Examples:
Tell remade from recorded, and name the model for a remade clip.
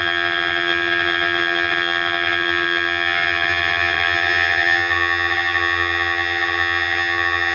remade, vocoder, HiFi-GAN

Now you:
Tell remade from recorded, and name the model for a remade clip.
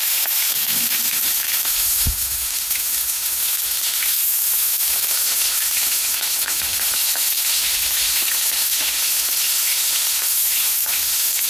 remade, autoencoder, DAC-VAE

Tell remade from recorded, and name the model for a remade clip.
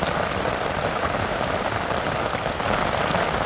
remade, vocoder, BigVGAN v2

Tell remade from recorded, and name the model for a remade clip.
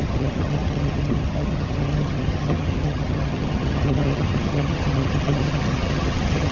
remade, vocoder, HiFi-GAN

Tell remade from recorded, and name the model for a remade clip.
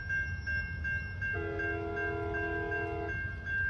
recorded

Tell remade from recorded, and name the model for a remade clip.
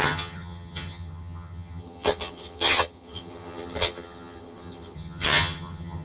remade, vocoder, HiFi-GAN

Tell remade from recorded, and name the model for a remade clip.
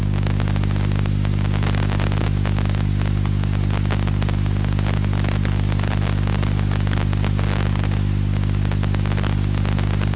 recorded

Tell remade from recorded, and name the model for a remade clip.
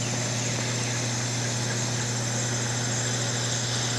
recorded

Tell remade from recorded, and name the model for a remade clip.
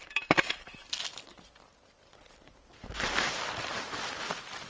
recorded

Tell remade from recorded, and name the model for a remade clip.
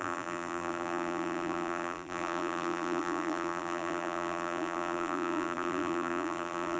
remade, vocoder, BigVGAN v2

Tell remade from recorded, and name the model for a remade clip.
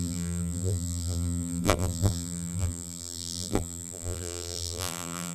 remade, vocoder, BigVGAN v2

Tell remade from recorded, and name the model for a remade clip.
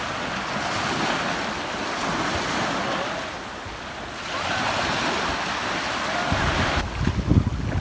recorded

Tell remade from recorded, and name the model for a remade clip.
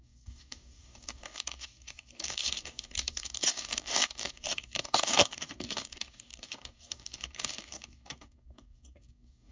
remade, codec, DAC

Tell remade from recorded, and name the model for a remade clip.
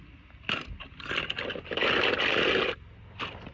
recorded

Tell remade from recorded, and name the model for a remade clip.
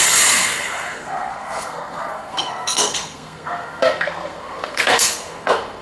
remade, codec, SNAC